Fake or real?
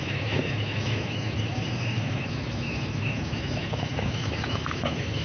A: fake